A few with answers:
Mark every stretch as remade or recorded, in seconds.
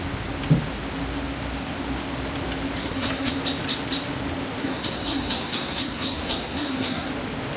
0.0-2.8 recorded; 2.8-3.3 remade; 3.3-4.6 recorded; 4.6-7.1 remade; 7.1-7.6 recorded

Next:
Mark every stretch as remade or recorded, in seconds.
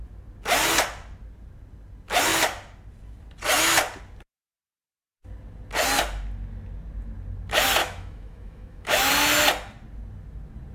0.0-7.8 recorded; 7.8-9.1 remade; 9.1-10.7 recorded